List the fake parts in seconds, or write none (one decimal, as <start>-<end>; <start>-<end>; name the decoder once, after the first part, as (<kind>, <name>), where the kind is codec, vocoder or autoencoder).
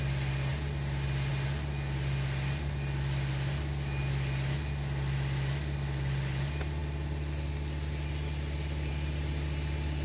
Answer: none